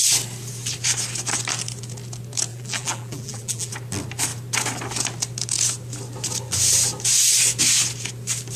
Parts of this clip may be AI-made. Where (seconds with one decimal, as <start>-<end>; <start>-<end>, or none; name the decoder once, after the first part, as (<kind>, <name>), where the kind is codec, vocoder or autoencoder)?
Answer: 2.5-3.7 (vocoder, BigVGAN v2)